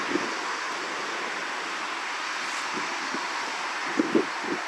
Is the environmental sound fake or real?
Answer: real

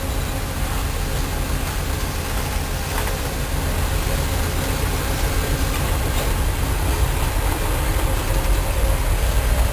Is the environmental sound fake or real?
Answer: real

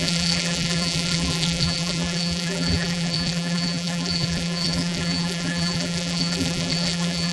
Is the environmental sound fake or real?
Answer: fake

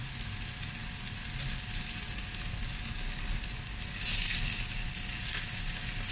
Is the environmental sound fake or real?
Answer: real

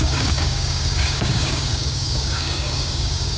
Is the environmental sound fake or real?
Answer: fake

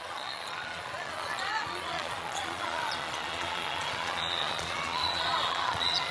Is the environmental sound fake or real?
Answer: fake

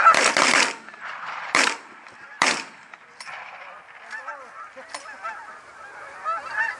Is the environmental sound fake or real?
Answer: real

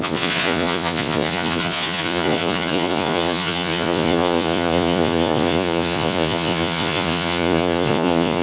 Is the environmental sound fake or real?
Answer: fake